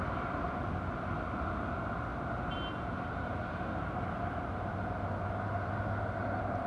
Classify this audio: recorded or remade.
recorded